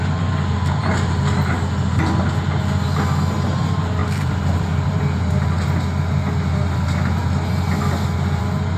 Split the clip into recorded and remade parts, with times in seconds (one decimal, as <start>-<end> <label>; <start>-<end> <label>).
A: 0.0-4.0 recorded; 4.0-5.0 remade; 5.0-8.8 recorded